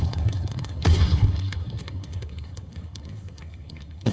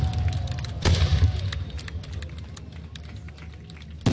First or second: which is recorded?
second